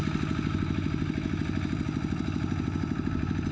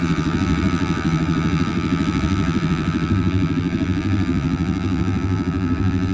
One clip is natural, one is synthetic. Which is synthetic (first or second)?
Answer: second